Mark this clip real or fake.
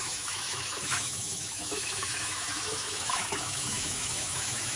fake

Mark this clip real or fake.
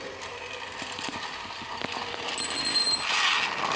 real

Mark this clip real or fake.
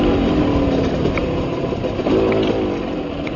real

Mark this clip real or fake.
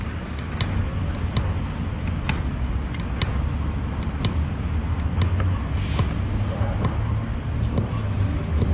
real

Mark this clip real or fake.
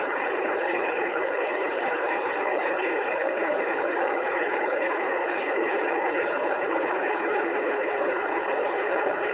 fake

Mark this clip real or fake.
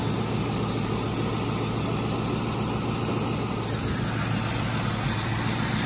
real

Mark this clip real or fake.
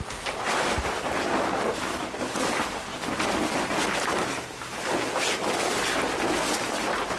real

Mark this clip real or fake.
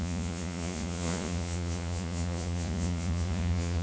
fake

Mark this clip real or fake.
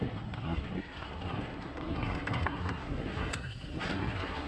fake